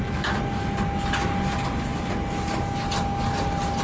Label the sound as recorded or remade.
recorded